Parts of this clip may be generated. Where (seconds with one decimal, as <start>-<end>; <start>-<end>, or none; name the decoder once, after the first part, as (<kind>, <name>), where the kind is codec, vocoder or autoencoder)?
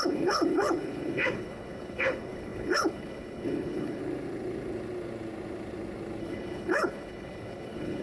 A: 0.0-4.0 (codec, HILCodec); 6.2-8.0